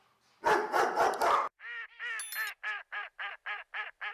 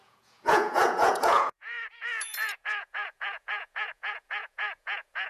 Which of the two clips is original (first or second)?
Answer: first